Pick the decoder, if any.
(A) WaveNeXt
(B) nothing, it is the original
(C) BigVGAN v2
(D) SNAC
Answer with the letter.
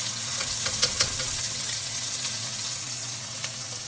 A